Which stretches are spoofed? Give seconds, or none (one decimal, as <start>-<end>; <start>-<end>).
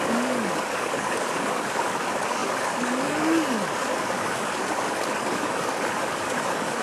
0.0-6.8